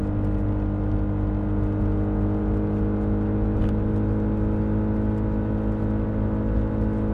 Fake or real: real